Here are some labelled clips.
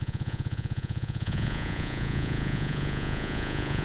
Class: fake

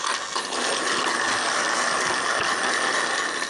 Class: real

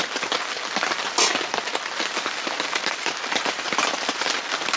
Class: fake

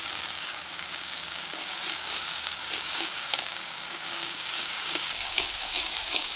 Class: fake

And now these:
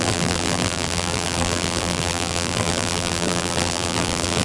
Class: fake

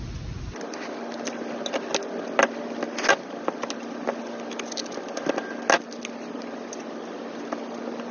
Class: real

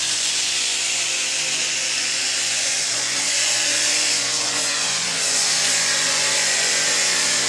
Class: fake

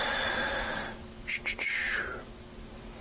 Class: real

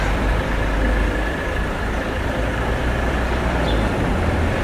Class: fake